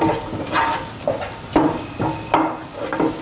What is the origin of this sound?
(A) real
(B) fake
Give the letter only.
A